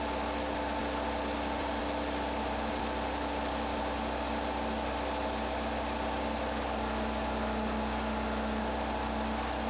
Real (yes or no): yes